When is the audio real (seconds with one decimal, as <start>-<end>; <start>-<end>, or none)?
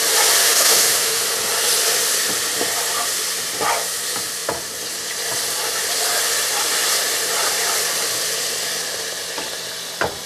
0.0-0.4; 1.2-10.3